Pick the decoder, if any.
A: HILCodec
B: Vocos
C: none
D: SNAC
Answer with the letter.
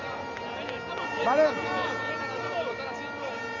C